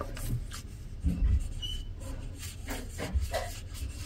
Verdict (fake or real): real